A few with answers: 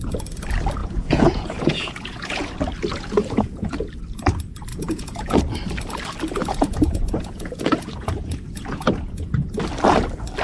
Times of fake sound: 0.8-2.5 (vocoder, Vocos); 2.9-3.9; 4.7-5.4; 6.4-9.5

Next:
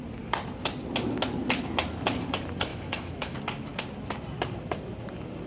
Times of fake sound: 2.7-3.4 (autoencoder, DAC-VAE)

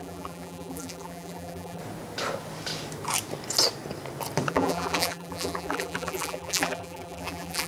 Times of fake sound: 0.0-1.8 (vocoder, BigVGAN v2); 4.5-7.7

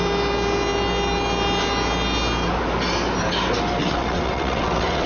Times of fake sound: 3.8-5.1 (vocoder, WaveNeXt)

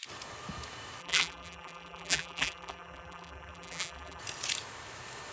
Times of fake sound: 1.0-4.2 (vocoder, BigVGAN v2)

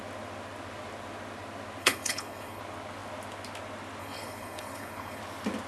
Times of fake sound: 1.8-2.6 (codec, HILCodec); 4.0-5.2